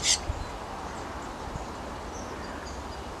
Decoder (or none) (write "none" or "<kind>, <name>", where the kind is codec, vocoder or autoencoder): none